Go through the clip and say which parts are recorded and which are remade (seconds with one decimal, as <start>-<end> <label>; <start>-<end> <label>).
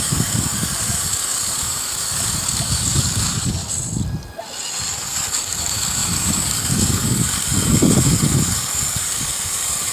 0.0-3.6 remade; 3.6-4.9 recorded; 4.9-9.9 remade